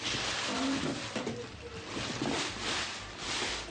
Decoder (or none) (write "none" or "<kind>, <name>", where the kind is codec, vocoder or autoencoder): none